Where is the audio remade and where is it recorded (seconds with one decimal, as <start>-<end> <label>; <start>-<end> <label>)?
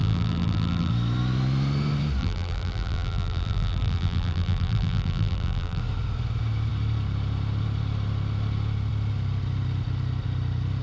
0.0-0.9 remade; 0.9-2.2 recorded; 2.2-5.8 remade; 5.8-10.8 recorded